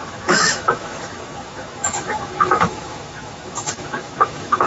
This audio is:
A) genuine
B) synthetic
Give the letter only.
B